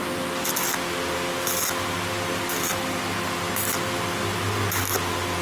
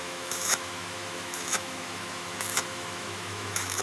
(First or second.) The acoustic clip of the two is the first